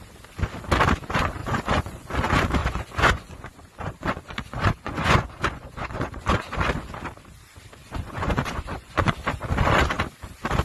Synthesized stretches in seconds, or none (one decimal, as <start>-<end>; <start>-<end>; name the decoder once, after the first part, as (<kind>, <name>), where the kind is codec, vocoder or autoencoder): 1.4-2.1 (vocoder, Vocos); 2.6-6.7; 7.8-9.1